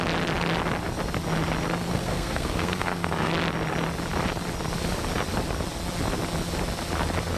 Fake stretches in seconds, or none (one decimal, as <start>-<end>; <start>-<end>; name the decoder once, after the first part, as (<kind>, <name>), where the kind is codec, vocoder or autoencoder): 1.9-3.3 (codec, SNAC)